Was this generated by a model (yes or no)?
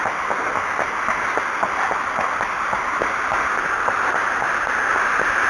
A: no